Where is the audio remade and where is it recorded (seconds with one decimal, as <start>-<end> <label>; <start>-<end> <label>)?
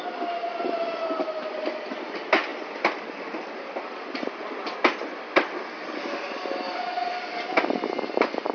0.0-8.5 recorded